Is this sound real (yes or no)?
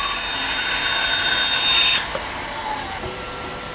yes